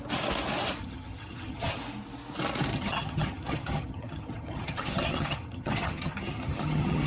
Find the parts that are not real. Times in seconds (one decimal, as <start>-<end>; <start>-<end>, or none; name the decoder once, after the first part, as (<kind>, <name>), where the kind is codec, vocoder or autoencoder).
0.8-1.8 (vocoder, HiFi-GAN); 2.7-7.1